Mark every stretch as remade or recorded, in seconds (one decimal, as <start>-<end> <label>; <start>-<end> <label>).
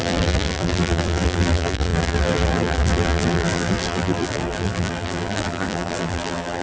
0.0-6.6 remade